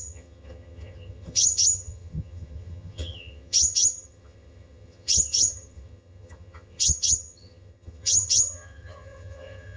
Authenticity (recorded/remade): remade